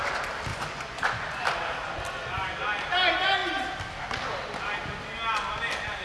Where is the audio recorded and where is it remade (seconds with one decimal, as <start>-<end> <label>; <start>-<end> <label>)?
0.0-0.5 recorded; 0.5-1.4 remade; 1.4-6.0 recorded